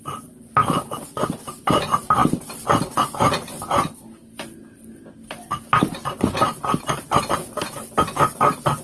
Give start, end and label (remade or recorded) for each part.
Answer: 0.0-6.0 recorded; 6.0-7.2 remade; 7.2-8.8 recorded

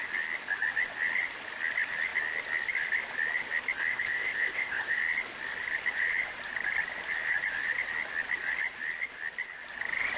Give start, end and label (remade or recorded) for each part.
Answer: 0.0-3.9 recorded; 3.9-5.0 remade; 5.0-10.2 recorded

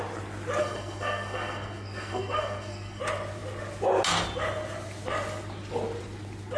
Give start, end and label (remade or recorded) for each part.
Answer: 0.0-0.6 recorded; 0.6-3.0 remade; 3.0-6.6 recorded

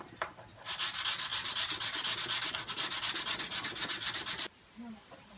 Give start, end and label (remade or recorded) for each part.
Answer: 0.0-5.4 recorded

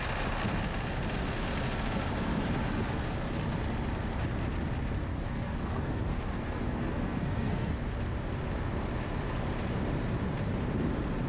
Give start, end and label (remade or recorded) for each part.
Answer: 0.0-5.1 recorded; 5.1-7.7 remade; 7.7-11.3 recorded

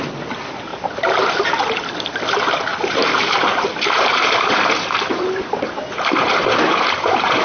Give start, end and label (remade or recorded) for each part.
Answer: 0.0-0.7 recorded; 0.7-1.3 remade; 1.3-2.7 recorded; 2.7-7.4 remade